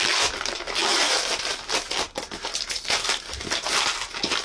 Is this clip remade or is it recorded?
recorded